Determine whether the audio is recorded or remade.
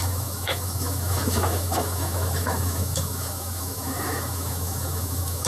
remade